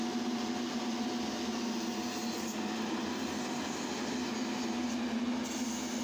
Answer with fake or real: real